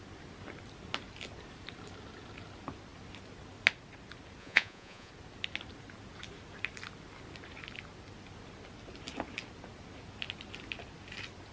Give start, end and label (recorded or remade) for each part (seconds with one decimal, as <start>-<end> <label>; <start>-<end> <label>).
0.0-4.4 recorded; 4.4-5.1 remade; 5.1-11.5 recorded